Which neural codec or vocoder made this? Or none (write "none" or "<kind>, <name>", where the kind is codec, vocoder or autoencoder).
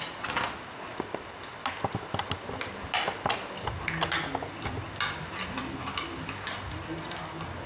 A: none